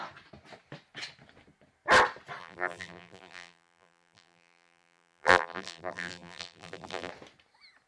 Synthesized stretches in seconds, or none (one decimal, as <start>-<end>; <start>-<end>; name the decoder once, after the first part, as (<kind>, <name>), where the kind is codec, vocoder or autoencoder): 2.4-7.1 (vocoder, BigVGAN v2)